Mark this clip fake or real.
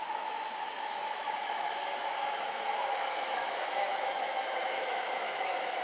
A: fake